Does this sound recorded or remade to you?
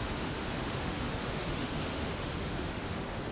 remade